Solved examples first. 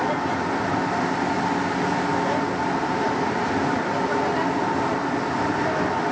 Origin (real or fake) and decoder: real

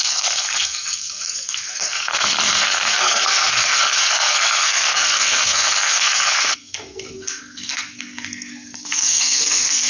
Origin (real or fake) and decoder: fake, codec, SNAC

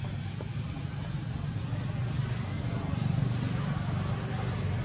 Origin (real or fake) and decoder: real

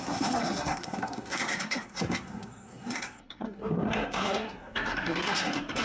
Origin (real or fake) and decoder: fake, codec, SNAC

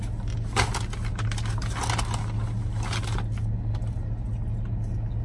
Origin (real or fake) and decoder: real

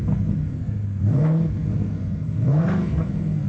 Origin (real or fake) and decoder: fake, codec, SNAC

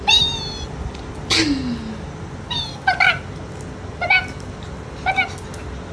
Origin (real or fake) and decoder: real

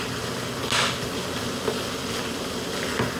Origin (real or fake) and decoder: real